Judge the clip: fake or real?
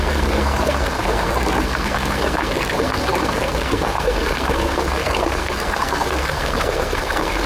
fake